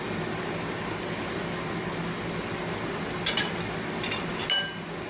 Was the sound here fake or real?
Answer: real